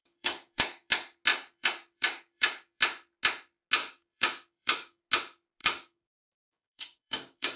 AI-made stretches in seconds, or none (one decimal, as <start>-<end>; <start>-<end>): 0.0-0.9; 1.3-2.8; 3.8-5.0; 5.6-7.6